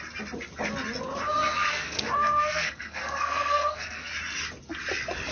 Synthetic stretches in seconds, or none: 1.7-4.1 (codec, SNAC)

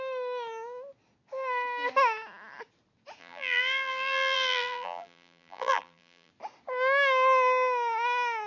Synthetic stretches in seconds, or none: 3.2-6.3 (vocoder, BigVGAN v2)

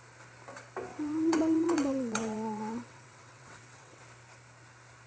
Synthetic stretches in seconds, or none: 0.9-4.0 (vocoder, WaveNeXt)

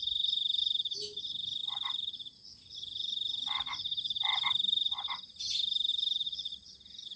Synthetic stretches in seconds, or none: 0.6-1.2 (vocoder, BigVGAN v2)